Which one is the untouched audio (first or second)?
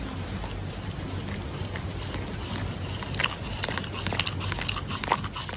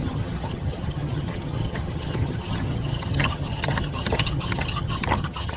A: first